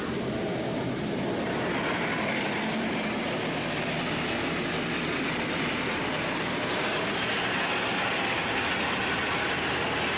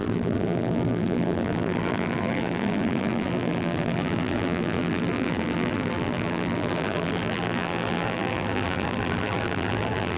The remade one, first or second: second